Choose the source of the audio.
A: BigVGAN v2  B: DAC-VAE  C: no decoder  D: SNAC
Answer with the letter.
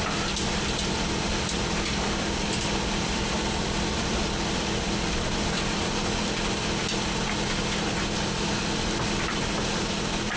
A